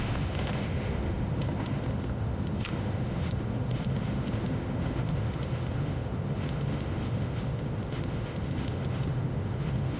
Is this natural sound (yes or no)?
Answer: no